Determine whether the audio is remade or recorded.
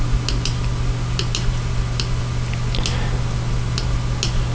recorded